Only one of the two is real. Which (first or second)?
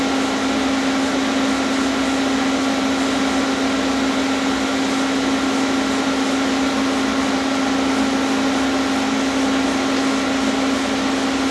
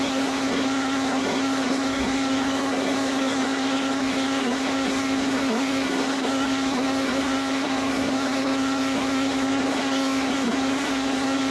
first